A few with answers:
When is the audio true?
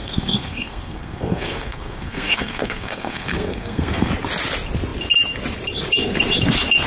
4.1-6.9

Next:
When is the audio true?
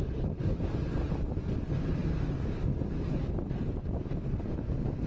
0.0-5.1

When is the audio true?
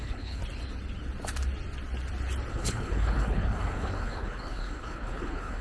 0.4-2.5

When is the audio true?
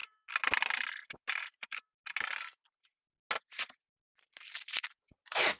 0.0-1.4; 2.0-4.7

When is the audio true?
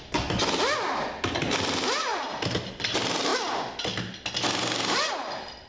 0.0-2.1; 2.7-5.7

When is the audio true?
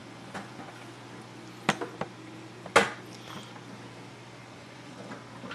0.7-4.4; 5.1-5.5